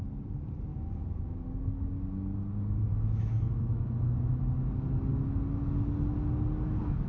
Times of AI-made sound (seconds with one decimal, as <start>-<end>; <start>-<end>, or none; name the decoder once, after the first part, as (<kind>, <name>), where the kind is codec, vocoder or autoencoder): 0.7-1.2 (autoencoder, DAC-VAE); 2.9-4.4